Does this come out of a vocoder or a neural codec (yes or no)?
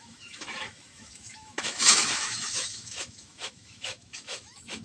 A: yes